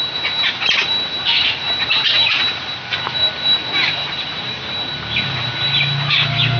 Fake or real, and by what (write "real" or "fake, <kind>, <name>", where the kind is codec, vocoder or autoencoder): real